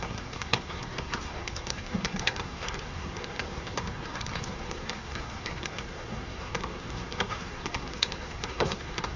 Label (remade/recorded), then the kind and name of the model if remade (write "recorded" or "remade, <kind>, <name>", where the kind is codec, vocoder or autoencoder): remade, codec, SNAC